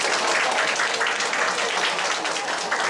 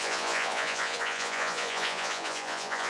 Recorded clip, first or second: first